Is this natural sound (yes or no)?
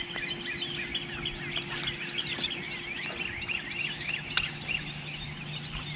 yes